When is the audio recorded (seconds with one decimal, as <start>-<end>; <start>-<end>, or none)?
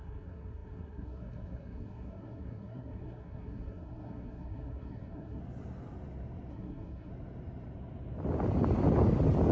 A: 5.4-6.5; 7.1-9.5